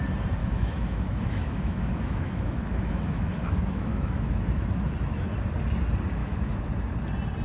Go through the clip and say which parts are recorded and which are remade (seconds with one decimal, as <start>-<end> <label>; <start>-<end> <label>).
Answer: 0.0-0.4 recorded; 0.4-4.8 remade; 4.8-6.2 recorded; 6.2-6.7 remade; 6.7-7.4 recorded